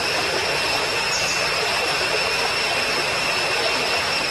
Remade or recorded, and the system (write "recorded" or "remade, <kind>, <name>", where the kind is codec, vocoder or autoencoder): recorded